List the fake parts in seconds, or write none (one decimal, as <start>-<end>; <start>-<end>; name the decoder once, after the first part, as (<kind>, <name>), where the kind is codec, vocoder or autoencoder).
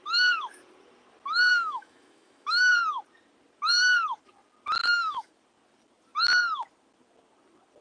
1.5-2.7 (autoencoder, DAC-VAE); 4.8-5.3